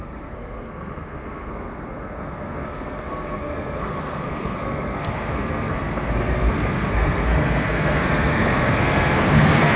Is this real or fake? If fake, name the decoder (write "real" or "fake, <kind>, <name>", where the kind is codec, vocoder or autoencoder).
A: fake, codec, SNAC